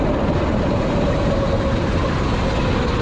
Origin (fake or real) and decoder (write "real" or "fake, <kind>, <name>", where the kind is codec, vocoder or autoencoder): real